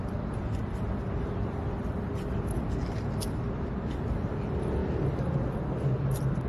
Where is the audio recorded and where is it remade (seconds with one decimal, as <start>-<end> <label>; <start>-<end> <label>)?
0.0-0.6 remade; 0.6-6.5 recorded